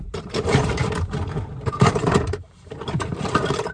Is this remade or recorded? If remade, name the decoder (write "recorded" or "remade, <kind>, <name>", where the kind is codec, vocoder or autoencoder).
remade, vocoder, BigVGAN v2